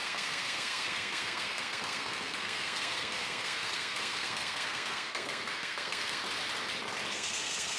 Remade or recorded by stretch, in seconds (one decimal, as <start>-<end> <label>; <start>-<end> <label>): 0.0-6.2 remade; 6.2-7.1 recorded; 7.1-7.8 remade